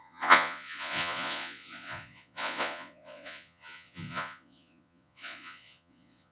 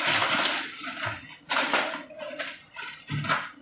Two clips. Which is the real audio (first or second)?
second